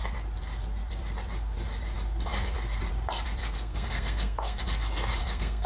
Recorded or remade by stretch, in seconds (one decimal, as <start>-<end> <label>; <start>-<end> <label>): 0.0-3.4 recorded; 3.4-4.6 remade; 4.6-5.2 recorded; 5.2-5.7 remade